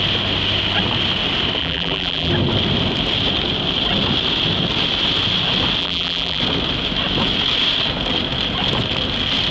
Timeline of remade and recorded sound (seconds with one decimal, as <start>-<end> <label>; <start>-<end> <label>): 0.0-1.6 recorded; 1.6-2.3 remade; 2.3-5.8 recorded; 5.8-6.4 remade; 6.4-9.5 recorded